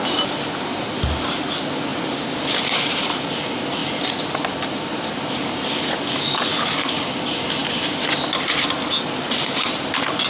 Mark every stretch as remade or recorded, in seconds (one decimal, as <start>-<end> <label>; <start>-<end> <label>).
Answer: 0.0-1.9 recorded; 1.9-3.1 remade; 3.1-3.8 recorded; 3.8-5.4 remade; 5.4-7.6 recorded; 7.6-8.2 remade; 8.2-10.3 recorded